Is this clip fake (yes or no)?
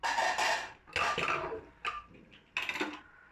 no